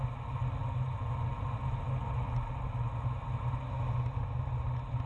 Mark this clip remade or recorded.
recorded